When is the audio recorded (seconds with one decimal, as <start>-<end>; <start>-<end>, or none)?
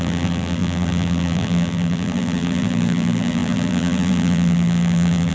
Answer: none